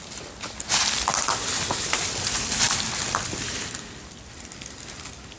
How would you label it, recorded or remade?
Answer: recorded